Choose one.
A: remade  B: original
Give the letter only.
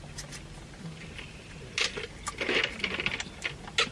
B